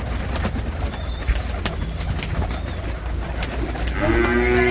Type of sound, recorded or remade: recorded